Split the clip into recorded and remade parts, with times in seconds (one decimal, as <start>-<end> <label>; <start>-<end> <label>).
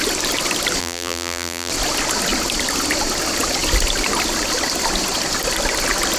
0.0-0.8 recorded; 0.8-1.7 remade; 1.7-6.2 recorded